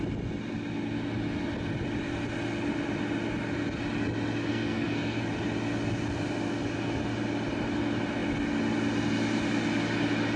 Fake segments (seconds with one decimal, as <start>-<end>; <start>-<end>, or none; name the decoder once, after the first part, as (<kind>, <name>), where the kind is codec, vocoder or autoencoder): 4.5-5.2 (codec, SNAC)